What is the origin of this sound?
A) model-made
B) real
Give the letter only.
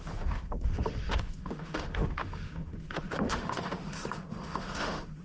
A